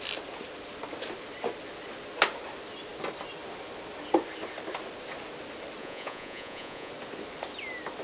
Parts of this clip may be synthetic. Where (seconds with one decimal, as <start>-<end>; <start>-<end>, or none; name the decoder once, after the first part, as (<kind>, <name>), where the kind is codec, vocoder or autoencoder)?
5.8-6.9 (vocoder, Vocos)